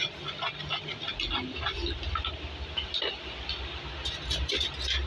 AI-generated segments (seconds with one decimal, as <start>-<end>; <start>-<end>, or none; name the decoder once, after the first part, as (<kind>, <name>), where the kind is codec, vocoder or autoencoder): none